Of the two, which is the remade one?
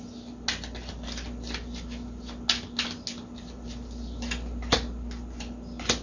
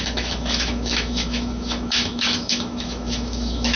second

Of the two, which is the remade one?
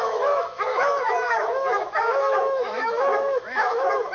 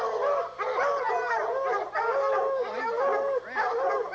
first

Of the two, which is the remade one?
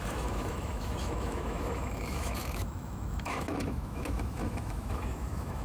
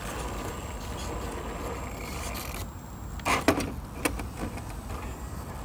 first